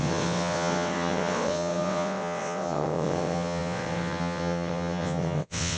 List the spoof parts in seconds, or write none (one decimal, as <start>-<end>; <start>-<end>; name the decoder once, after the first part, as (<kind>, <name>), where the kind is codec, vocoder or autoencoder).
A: 0.0-5.8 (vocoder, WaveNeXt)